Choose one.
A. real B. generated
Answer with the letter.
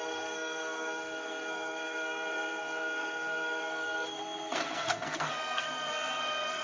B